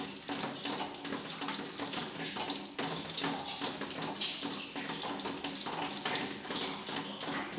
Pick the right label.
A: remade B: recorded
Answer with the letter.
B